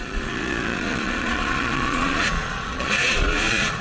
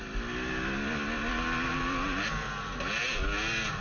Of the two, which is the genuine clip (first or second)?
second